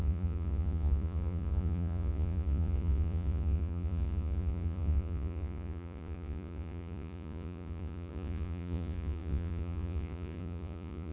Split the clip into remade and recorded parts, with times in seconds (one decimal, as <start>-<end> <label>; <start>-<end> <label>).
0.0-11.1 remade